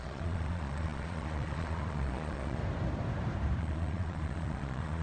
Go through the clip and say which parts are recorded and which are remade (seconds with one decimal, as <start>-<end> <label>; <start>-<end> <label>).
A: 0.0-2.6 remade; 2.6-3.6 recorded; 3.6-5.0 remade